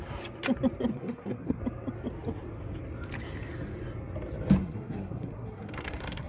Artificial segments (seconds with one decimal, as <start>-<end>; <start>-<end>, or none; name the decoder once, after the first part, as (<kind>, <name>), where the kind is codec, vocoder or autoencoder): 0.9-1.6 (codec, SNAC); 4.6-6.3